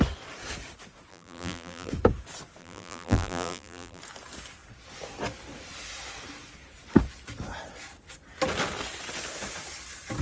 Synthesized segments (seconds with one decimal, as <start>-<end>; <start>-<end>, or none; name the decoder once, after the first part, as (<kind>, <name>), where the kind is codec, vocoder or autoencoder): 1.1-1.9 (vocoder, BigVGAN v2); 2.6-4.0